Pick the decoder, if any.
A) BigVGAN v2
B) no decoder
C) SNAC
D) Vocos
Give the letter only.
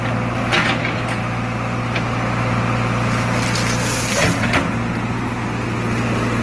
B